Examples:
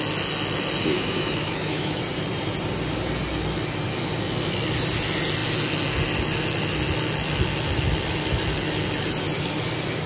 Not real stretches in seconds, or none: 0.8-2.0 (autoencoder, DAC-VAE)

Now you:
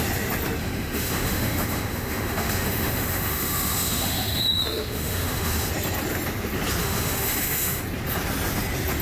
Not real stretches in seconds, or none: 0.6-5.7 (autoencoder, DAC-VAE); 6.8-7.8

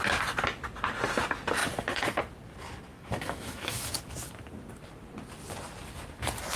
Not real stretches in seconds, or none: 2.9-3.9 (autoencoder, DAC-VAE)